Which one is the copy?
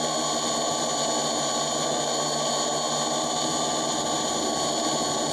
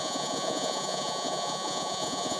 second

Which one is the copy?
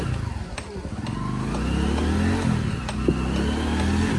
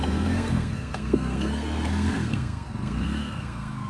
second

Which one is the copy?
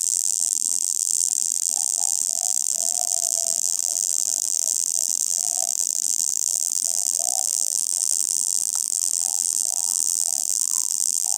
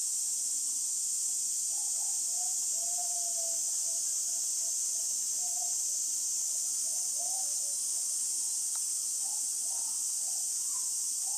first